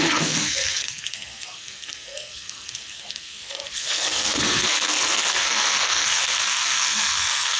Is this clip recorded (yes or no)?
no